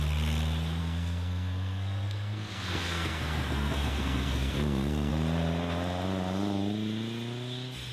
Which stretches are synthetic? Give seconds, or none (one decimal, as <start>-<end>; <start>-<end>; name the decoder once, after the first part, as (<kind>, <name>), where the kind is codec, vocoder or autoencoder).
0.8-5.1 (codec, SNAC)